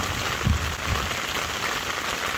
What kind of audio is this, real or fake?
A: real